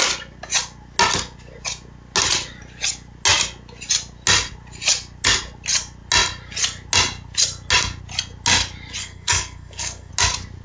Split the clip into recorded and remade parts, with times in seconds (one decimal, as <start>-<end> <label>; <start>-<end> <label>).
0.0-9.0 recorded; 9.0-10.1 remade; 10.1-10.6 recorded